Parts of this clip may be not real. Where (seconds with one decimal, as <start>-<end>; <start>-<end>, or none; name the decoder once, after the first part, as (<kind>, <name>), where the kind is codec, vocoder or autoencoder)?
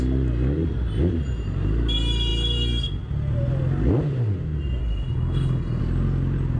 4.8-5.8 (codec, HILCodec)